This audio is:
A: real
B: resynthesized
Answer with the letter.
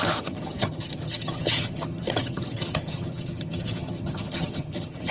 B